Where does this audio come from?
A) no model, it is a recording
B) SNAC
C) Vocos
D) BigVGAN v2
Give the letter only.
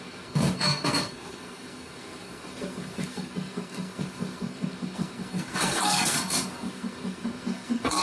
B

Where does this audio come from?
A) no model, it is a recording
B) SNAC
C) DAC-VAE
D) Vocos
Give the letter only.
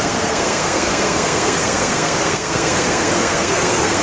B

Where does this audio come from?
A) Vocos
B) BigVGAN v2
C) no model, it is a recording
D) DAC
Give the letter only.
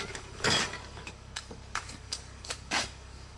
D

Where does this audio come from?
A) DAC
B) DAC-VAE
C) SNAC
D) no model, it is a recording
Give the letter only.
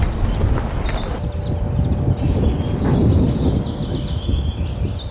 D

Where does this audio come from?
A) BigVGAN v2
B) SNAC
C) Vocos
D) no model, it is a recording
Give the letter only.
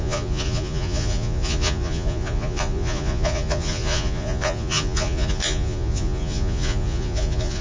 C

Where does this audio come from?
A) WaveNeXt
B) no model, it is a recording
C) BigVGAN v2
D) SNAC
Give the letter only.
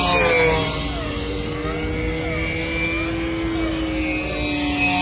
B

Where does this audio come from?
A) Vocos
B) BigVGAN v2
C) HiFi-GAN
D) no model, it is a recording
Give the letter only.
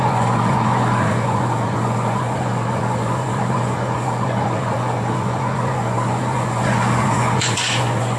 A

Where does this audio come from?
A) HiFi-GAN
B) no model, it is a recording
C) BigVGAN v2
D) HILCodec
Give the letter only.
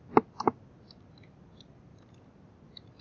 B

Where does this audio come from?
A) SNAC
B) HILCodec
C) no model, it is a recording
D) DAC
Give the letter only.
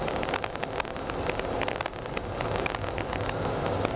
C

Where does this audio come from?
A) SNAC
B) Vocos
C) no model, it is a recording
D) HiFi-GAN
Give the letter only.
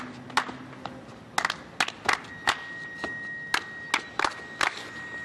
C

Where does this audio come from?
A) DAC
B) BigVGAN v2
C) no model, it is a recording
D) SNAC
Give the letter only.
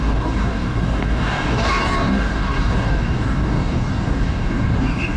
A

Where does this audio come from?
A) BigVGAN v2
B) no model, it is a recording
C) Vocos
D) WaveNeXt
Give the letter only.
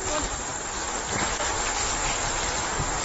B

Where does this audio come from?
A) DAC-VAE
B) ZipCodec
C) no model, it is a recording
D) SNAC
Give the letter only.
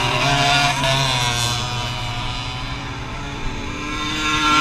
C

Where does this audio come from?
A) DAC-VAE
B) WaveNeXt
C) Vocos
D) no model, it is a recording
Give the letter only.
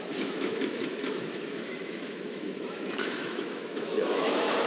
A